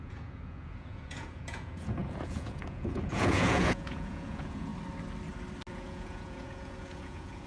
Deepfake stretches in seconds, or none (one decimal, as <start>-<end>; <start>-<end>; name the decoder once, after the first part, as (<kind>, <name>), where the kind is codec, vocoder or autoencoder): 0.0-4.7 (vocoder, Vocos); 5.7-7.5